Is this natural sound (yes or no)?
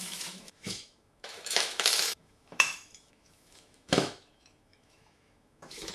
no